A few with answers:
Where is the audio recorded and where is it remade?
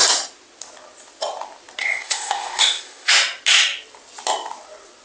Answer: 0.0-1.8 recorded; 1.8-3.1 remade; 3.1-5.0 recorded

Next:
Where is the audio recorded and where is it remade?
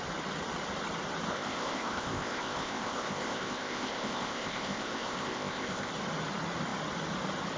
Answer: 0.0-1.3 recorded; 1.3-5.9 remade; 5.9-7.6 recorded